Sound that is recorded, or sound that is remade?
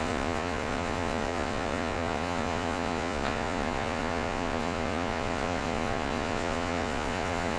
remade